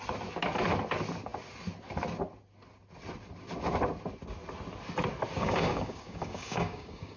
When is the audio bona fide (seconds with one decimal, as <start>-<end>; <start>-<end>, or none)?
0.0-5.4